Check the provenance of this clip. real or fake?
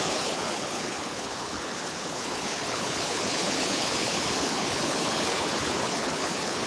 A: fake